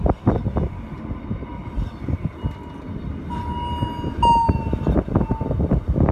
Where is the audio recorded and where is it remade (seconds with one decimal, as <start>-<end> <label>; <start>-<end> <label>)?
0.0-6.1 recorded

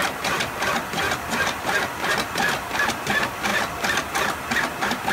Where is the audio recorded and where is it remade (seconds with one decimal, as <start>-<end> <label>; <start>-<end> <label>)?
0.0-3.1 remade; 3.1-3.5 recorded; 3.5-4.1 remade; 4.1-5.1 recorded

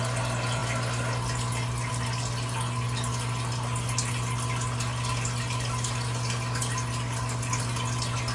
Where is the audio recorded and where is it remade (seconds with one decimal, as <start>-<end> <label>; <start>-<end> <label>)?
0.0-8.3 recorded

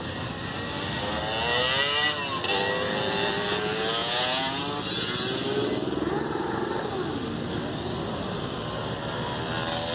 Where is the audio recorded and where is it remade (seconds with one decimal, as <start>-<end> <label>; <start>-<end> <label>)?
0.0-4.0 recorded; 4.0-4.6 remade; 4.6-9.9 recorded

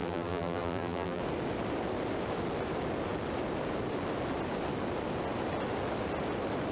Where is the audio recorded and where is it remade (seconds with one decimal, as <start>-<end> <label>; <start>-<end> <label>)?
0.0-1.2 remade; 1.2-6.7 recorded

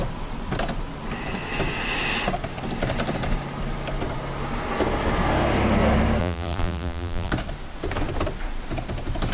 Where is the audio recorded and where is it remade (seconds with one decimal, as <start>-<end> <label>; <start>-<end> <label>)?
0.0-6.2 recorded; 6.2-7.3 remade; 7.3-9.3 recorded

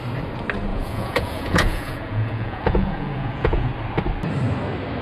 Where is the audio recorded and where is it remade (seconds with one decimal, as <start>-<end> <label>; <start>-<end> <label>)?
0.0-0.7 recorded; 0.7-3.7 remade; 3.7-5.0 recorded